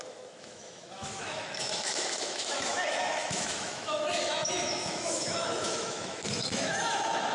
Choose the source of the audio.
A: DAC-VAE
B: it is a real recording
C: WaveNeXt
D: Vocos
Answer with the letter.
A